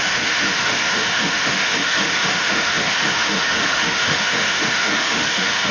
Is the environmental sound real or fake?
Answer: fake